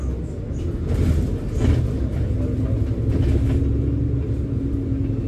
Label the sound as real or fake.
real